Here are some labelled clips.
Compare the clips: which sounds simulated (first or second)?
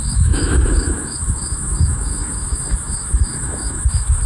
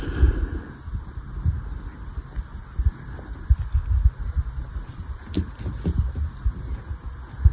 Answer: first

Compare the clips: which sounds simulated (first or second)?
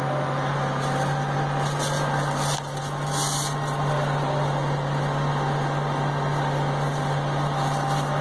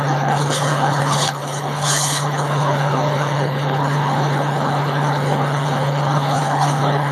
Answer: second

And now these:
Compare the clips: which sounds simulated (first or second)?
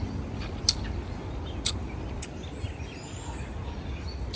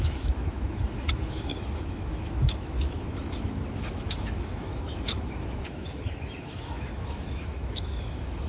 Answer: second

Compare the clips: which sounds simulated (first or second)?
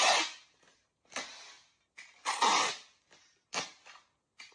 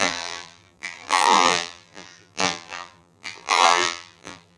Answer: second